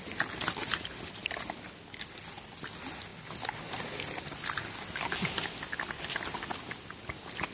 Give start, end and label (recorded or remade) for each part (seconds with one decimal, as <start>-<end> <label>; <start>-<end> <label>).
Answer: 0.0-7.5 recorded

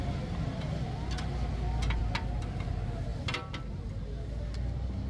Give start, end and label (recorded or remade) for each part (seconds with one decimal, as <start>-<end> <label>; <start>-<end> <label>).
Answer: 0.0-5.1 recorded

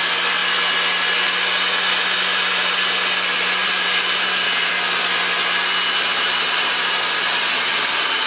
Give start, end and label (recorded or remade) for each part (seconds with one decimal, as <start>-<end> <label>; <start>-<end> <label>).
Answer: 0.0-3.6 recorded; 3.6-4.7 remade; 4.7-6.1 recorded; 6.1-8.3 remade